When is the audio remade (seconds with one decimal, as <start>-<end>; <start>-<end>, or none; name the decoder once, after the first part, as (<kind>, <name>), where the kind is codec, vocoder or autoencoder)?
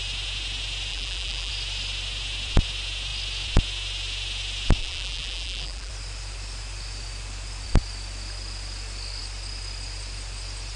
0.9-1.5 (vocoder, BigVGAN v2); 4.8-5.9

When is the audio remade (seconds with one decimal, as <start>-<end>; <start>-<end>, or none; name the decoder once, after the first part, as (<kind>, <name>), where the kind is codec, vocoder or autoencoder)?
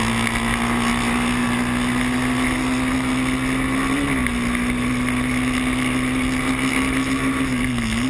none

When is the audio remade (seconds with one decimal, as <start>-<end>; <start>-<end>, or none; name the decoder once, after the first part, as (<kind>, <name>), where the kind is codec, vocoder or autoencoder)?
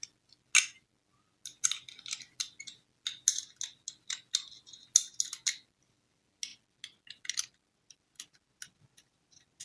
none